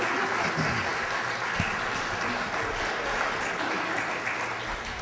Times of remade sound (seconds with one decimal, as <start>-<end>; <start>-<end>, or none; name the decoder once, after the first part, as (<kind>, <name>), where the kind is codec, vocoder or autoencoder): none